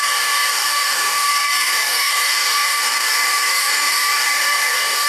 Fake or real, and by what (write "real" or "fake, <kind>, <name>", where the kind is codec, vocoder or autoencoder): fake, codec, DAC